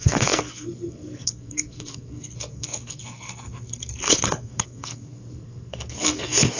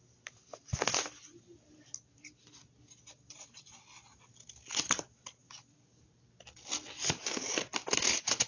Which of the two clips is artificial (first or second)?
first